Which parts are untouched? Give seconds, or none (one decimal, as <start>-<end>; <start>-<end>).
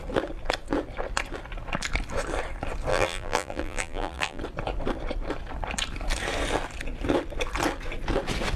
0.0-2.9; 4.4-8.6